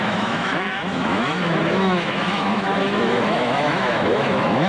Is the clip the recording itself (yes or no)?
no